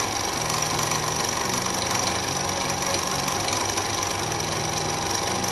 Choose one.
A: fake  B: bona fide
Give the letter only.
B